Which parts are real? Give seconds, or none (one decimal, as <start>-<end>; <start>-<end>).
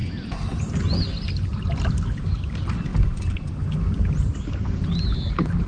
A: 0.0-5.7